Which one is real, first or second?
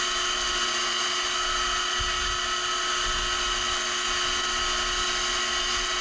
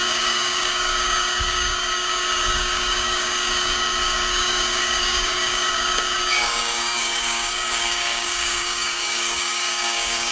first